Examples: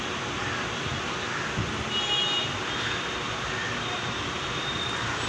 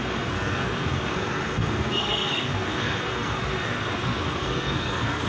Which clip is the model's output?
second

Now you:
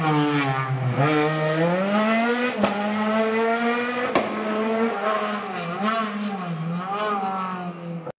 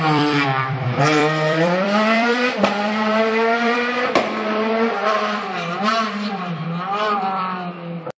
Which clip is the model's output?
second